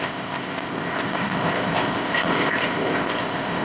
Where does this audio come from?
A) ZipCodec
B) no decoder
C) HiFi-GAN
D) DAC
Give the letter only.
A